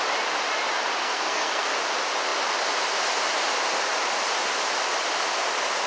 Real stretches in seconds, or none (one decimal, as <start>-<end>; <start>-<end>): 0.0-1.0; 1.8-5.9